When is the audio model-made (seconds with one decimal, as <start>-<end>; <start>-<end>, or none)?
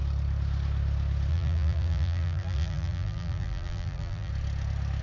1.3-4.3